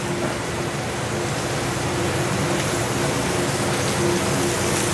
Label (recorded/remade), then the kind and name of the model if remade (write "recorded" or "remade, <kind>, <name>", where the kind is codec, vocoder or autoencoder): recorded